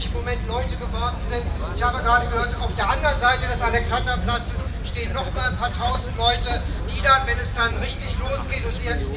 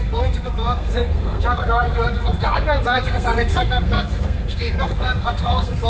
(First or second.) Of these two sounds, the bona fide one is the first